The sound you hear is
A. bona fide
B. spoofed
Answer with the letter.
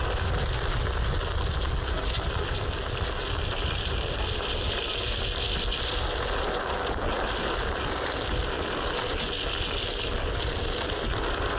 A